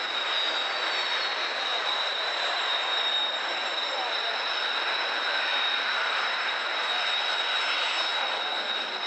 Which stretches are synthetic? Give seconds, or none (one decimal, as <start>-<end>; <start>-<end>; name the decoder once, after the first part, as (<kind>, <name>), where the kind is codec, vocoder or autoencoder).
1.7-4.3 (vocoder, BigVGAN v2); 5.5-6.9